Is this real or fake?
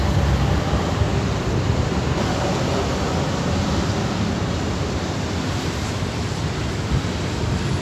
fake